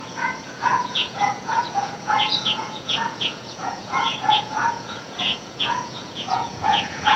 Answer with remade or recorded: remade